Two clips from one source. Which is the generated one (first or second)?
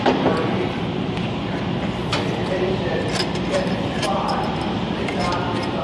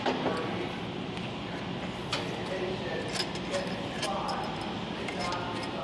first